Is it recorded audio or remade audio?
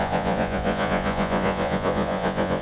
remade